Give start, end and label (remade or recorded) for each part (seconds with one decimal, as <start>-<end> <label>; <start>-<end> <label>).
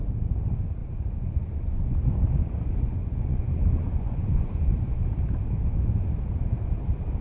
0.0-0.8 recorded; 0.8-2.0 remade; 2.0-3.0 recorded; 3.0-5.0 remade; 5.0-7.2 recorded